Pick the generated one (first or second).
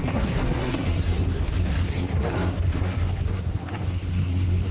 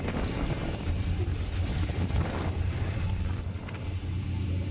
first